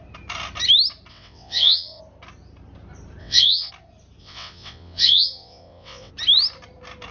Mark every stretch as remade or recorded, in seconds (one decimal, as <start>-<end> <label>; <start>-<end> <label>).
0.0-1.1 recorded; 1.1-2.0 remade; 2.0-3.2 recorded; 3.2-3.7 remade; 3.7-4.2 recorded; 4.2-6.1 remade; 6.1-7.1 recorded